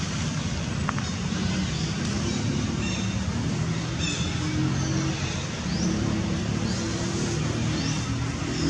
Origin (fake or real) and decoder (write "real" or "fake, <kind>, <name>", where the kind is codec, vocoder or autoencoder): real